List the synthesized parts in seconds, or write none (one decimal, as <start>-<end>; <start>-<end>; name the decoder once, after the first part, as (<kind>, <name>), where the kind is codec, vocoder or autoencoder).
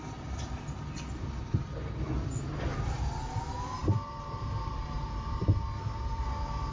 none